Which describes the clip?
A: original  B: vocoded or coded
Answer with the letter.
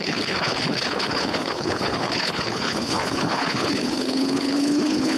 B